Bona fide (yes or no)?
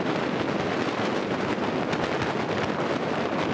yes